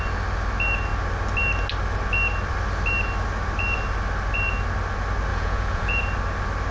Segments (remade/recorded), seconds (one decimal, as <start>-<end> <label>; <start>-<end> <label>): 0.0-5.3 recorded; 5.3-6.0 remade; 6.0-6.7 recorded